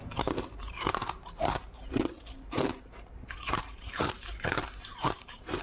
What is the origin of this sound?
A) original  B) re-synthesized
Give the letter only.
B